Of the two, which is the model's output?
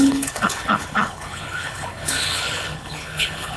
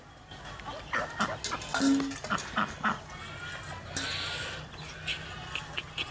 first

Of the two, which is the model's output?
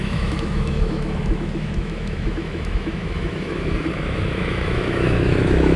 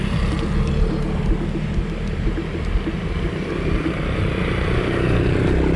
first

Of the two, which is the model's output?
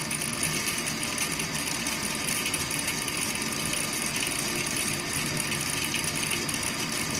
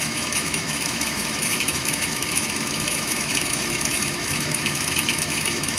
second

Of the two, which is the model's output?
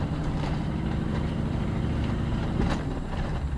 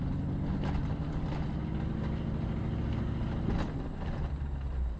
first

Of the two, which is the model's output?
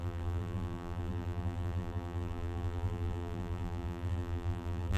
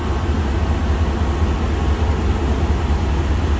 first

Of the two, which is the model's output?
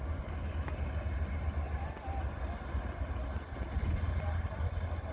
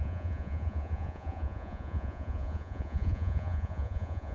second